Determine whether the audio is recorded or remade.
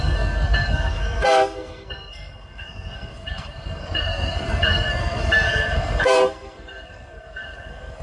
remade